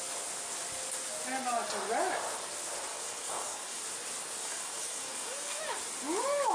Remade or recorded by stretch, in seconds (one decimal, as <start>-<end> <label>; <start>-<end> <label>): 0.0-2.9 recorded; 2.9-3.8 remade; 3.8-4.4 recorded; 4.4-5.6 remade; 5.6-6.5 recorded